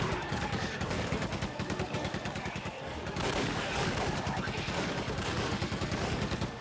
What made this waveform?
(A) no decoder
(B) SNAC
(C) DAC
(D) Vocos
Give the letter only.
C